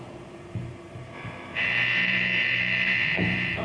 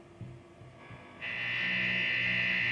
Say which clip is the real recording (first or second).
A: second